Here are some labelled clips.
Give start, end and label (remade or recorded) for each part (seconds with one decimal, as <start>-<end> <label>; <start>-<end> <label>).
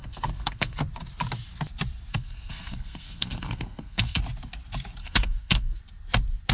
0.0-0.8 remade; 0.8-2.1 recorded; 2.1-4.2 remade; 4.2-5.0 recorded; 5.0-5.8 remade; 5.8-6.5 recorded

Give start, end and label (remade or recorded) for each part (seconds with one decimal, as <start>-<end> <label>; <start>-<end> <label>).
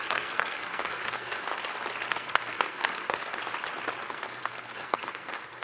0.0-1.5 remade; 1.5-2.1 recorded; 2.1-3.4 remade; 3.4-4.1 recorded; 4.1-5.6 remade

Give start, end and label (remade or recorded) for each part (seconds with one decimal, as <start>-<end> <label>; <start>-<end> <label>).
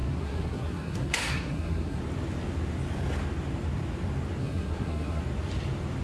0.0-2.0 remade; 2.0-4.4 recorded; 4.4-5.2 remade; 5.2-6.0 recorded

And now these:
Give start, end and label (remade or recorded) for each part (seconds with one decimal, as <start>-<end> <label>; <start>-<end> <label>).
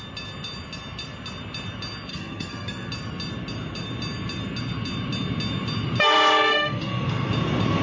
0.0-2.1 recorded; 2.1-2.9 remade; 2.9-6.5 recorded; 6.5-7.3 remade; 7.3-7.8 recorded